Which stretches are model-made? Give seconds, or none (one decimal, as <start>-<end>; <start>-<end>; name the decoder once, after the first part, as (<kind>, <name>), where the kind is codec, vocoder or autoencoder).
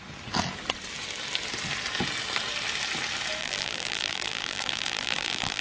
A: 3.4-5.6 (vocoder, BigVGAN v2)